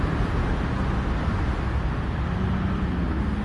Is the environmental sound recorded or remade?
recorded